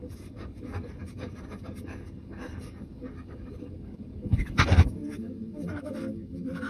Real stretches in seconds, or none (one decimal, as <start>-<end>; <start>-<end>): none